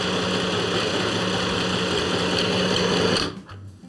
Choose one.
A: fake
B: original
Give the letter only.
B